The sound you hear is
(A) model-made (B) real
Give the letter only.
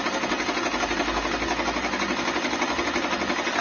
B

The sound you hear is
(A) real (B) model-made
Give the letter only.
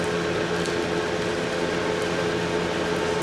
A